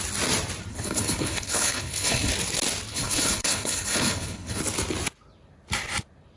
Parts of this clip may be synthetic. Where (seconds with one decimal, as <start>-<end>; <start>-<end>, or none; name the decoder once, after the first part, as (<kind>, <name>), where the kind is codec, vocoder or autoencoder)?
0.7-2.3 (codec, HILCodec); 2.9-4.6